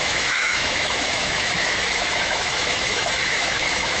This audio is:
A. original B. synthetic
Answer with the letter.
B